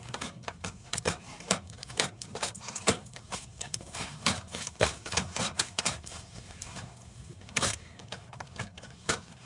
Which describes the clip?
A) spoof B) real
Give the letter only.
A